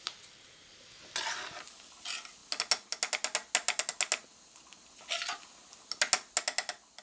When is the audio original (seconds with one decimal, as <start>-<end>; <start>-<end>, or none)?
0.0-7.0